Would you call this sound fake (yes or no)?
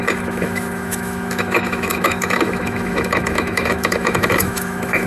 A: yes